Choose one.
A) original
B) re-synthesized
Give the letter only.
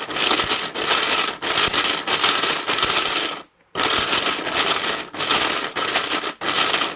A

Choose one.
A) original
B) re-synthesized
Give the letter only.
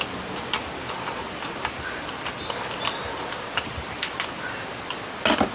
A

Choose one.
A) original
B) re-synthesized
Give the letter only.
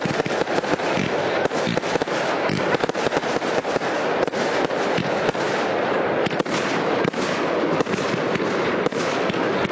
A